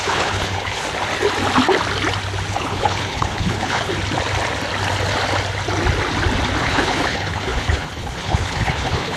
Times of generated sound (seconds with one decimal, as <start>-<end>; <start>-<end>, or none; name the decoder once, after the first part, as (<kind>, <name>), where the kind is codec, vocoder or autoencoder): 0.0-0.8 (codec, HILCodec); 2.5-3.9; 6.6-9.2